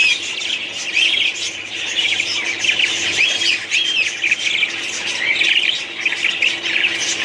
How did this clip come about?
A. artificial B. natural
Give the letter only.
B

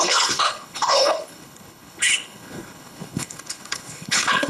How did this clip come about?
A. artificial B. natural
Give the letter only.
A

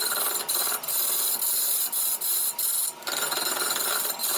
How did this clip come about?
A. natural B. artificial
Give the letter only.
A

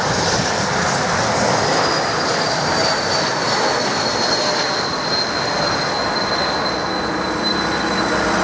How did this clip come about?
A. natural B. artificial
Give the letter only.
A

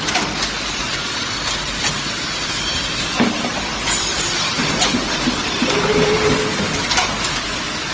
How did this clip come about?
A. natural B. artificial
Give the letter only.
A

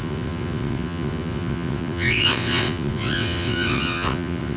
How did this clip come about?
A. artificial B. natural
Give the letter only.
A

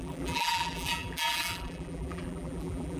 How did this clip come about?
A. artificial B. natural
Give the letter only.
A